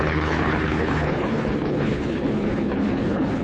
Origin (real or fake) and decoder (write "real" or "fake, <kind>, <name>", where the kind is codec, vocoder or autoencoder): fake, codec, HILCodec